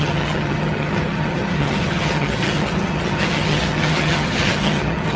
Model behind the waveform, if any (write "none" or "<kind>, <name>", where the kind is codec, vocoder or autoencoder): vocoder, HiFi-GAN